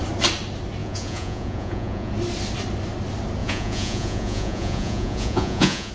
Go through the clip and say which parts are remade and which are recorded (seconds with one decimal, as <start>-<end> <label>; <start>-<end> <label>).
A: 0.0-0.8 recorded; 0.8-2.1 remade; 2.1-3.4 recorded; 3.4-5.9 remade